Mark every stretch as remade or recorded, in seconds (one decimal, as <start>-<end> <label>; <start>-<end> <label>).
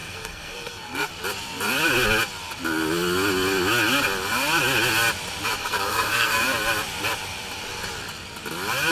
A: 0.0-1.1 remade; 1.1-5.6 recorded; 5.6-6.4 remade; 6.4-8.9 recorded